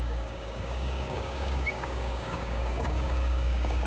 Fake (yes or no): yes